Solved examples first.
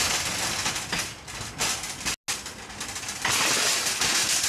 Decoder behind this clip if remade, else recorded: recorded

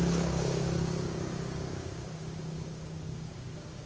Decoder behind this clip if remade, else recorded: remade, codec, DAC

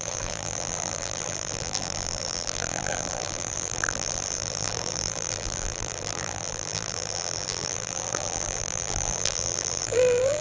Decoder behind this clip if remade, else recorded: remade, vocoder, BigVGAN v2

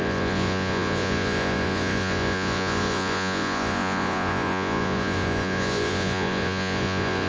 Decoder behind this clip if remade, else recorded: remade, vocoder, Vocos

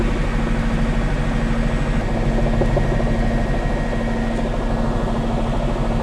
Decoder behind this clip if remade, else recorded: recorded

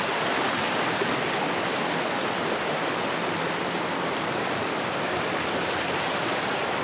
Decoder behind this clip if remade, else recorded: recorded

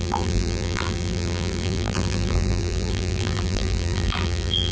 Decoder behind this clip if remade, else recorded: remade, vocoder, BigVGAN v2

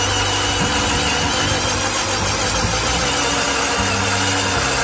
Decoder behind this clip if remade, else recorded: recorded